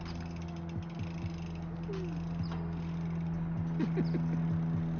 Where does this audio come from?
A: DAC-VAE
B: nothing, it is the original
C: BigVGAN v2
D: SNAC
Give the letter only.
B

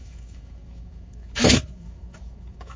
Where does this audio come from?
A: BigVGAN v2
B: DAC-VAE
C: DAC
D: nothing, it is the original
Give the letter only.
B